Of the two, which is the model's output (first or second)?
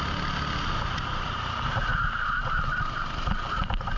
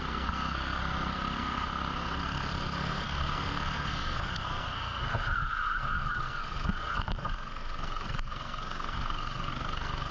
second